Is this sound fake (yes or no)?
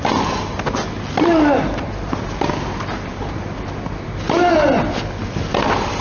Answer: no